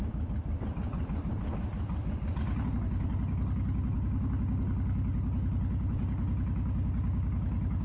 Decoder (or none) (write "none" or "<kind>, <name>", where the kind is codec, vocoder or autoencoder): none